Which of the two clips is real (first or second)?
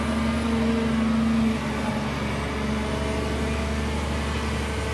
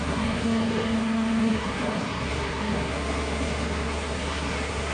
first